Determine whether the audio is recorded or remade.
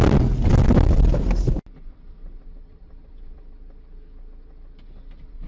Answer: recorded